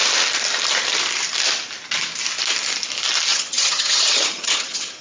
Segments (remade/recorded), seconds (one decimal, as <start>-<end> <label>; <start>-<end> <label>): 0.0-3.3 recorded; 3.3-5.0 remade